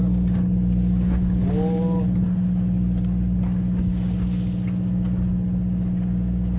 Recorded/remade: recorded